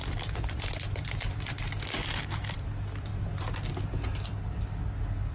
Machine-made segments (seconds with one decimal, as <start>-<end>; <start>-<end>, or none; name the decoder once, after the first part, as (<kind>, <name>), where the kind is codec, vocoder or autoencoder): 0.0-3.1 (vocoder, BigVGAN v2)